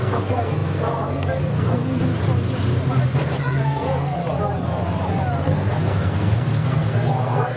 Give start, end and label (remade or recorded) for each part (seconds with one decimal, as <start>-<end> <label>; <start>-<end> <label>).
0.0-2.1 remade; 2.1-3.4 recorded; 3.4-4.2 remade; 4.2-5.3 recorded; 5.3-7.6 remade